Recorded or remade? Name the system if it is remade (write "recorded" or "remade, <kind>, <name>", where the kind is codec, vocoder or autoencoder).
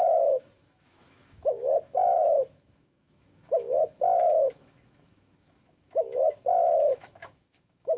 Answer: remade, autoencoder, DAC-VAE